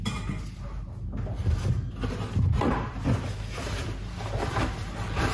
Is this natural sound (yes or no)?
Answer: yes